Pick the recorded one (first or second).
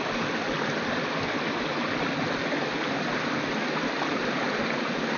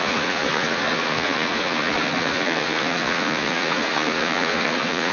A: first